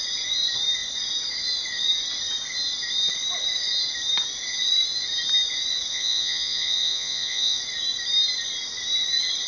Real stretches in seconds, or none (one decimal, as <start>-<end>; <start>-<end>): 0.0-5.9; 7.6-9.5